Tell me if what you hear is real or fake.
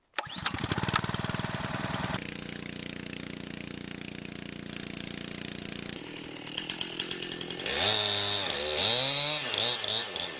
real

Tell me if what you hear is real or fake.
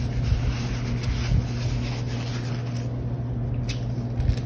real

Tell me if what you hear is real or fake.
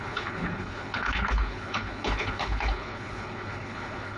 fake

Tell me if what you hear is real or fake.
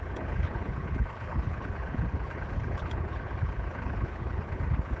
fake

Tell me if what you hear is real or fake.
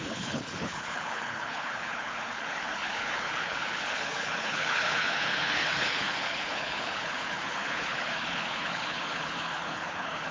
fake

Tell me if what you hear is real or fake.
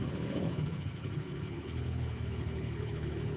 fake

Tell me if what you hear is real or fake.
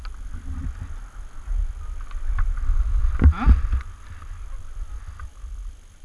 real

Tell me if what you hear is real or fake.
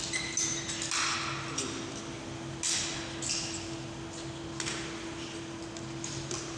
real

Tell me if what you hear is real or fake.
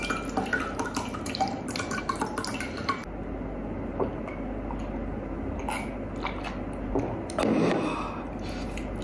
real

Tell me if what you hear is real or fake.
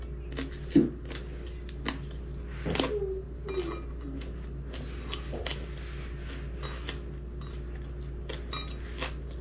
real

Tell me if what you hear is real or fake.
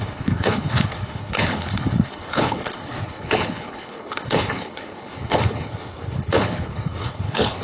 fake